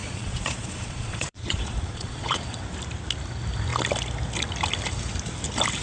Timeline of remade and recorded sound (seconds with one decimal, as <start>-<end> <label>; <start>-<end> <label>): 0.0-2.6 remade; 2.6-5.8 recorded